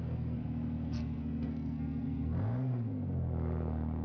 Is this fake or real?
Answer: fake